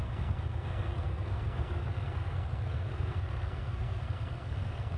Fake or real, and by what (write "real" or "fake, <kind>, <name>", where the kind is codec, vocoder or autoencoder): fake, codec, SNAC